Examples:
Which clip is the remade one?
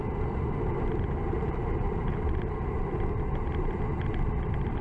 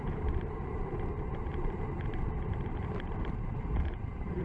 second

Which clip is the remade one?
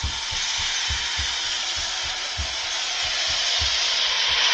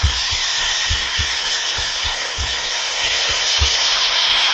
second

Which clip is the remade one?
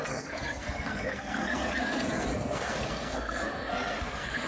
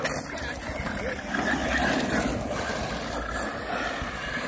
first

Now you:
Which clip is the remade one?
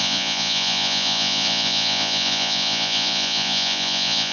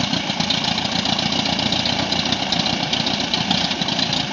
first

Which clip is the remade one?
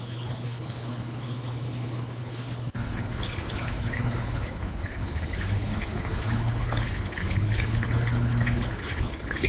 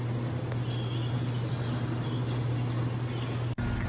first